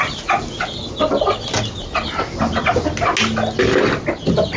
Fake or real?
real